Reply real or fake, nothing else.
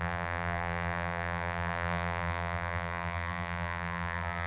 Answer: fake